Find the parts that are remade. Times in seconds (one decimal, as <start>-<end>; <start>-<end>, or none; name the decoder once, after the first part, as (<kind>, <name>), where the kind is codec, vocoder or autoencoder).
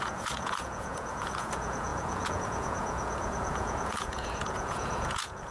0.0-5.5 (vocoder, Vocos)